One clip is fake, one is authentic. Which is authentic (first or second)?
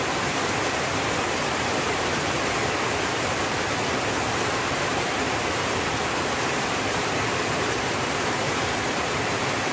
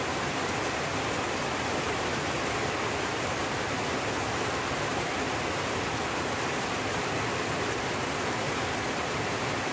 second